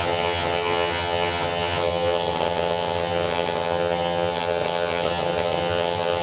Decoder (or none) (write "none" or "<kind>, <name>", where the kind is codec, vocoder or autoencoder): vocoder, HiFi-GAN